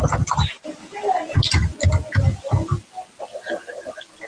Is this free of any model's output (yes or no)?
yes